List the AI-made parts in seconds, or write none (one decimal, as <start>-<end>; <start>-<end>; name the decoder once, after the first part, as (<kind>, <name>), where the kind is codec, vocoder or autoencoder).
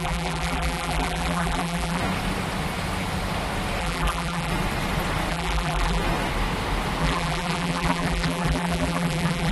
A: 0.0-2.0 (vocoder, BigVGAN v2); 3.8-4.5; 5.3-6.0; 7.0-9.5